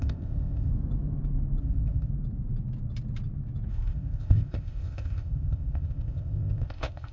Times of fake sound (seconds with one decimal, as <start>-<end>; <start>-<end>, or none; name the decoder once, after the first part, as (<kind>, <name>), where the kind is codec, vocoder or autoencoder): 0.0-0.7 (codec, ZipCodec); 1.6-2.1; 3.7-7.1